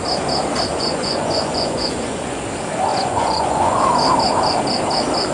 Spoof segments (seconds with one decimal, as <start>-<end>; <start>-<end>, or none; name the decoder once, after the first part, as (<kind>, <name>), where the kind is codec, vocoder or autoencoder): 0.7-2.4 (vocoder, Vocos); 2.9-3.8